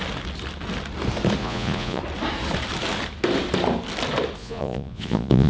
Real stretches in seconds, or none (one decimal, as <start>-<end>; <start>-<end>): 0.0-1.4; 2.0-4.4